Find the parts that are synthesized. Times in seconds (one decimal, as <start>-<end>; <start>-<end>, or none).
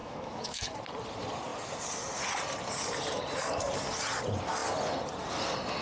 0.0-0.7